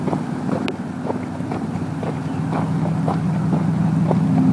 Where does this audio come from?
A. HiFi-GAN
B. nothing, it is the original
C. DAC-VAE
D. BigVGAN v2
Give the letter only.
D